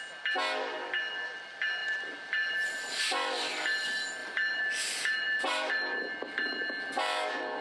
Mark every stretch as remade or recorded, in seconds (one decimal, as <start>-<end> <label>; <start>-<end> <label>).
0.0-1.8 recorded; 1.8-3.0 remade; 3.0-4.2 recorded; 4.2-5.7 remade; 5.7-7.6 recorded